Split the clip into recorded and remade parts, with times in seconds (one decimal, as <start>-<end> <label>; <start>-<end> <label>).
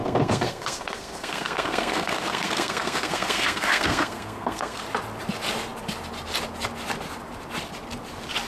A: 0.0-4.8 remade; 4.8-8.5 recorded